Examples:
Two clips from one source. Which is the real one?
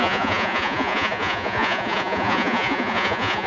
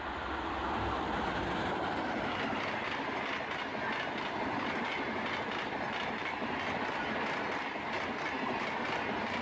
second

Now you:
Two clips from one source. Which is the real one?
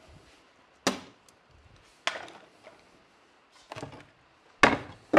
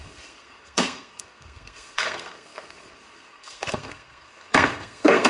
first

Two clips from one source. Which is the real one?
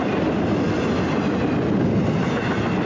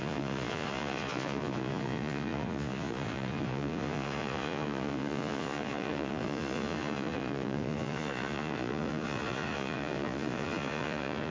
first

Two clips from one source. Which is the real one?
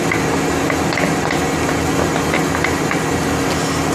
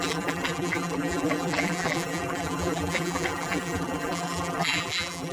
first